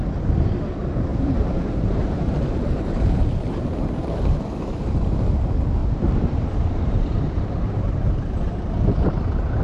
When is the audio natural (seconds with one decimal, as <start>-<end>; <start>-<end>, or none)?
0.0-1.1; 5.3-5.8; 8.5-9.6